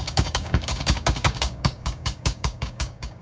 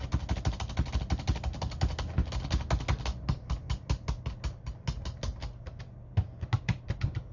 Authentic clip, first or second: second